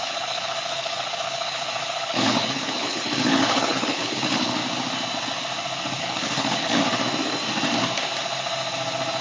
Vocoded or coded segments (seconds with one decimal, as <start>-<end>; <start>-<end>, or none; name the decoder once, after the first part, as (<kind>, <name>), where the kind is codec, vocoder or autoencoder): 0.0-4.6 (codec, HILCodec); 6.0-6.8